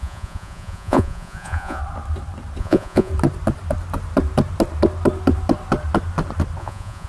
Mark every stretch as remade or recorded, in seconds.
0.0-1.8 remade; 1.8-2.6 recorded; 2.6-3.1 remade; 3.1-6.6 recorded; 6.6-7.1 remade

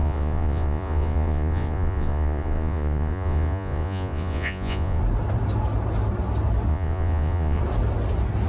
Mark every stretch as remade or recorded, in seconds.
0.0-5.0 remade; 5.0-6.7 recorded; 6.7-7.6 remade; 7.6-8.5 recorded